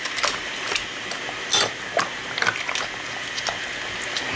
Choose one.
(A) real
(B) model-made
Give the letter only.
A